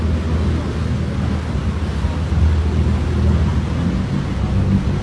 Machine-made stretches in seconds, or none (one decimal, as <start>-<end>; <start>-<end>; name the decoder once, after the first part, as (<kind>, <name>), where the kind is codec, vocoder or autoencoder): none